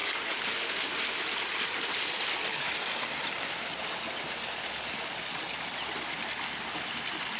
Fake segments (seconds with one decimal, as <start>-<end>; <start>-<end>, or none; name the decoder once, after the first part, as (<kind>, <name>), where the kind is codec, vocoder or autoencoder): 0.0-0.7 (codec, DAC); 2.5-3.1